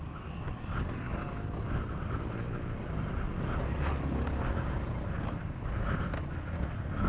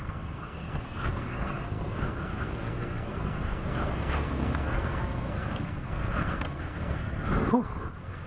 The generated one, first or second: second